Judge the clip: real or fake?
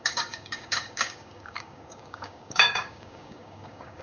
fake